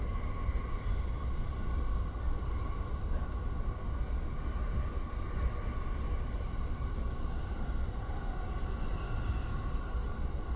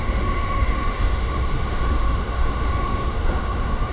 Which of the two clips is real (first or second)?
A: first